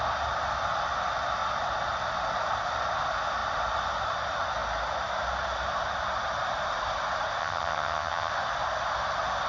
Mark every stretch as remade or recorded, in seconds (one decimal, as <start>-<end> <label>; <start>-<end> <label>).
0.0-7.4 recorded; 7.4-8.3 remade; 8.3-9.5 recorded